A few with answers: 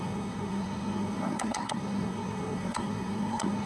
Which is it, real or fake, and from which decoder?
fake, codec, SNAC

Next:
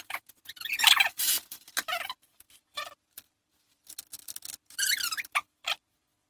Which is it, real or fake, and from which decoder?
fake, vocoder, BigVGAN v2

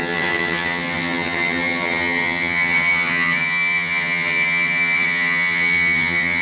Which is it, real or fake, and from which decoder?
fake, vocoder, HiFi-GAN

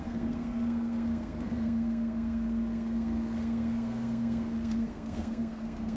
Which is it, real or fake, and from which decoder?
fake, codec, SNAC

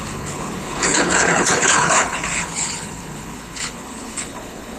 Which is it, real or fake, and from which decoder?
fake, codec, HILCodec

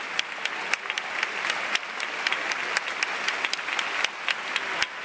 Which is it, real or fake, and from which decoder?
real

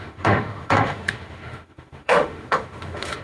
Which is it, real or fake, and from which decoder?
fake, autoencoder, DAC-VAE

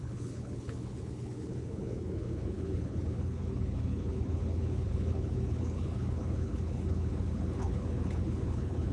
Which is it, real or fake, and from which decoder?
fake, codec, HILCodec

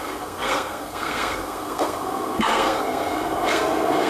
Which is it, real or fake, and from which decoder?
fake, codec, SNAC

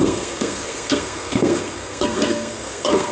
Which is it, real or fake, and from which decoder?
fake, codec, SNAC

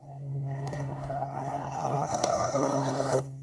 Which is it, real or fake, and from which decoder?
fake, codec, SNAC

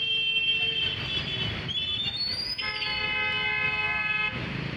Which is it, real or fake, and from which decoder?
real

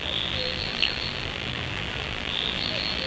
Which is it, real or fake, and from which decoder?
fake, vocoder, BigVGAN v2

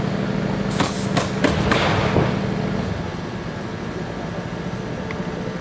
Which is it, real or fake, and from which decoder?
real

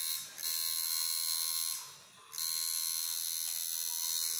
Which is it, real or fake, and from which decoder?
real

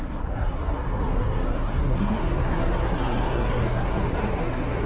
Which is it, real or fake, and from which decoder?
fake, codec, SNAC